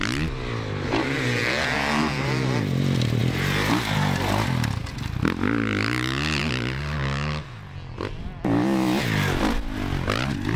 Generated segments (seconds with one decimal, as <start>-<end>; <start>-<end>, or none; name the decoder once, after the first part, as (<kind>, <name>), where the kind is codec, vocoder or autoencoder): none